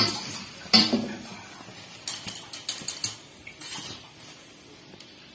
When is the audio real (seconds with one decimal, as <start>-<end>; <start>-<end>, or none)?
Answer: 1.3-3.5